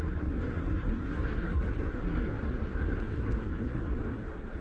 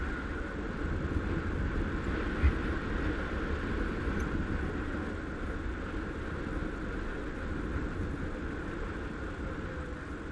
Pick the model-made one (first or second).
first